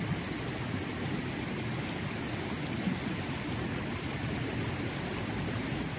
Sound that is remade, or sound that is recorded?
recorded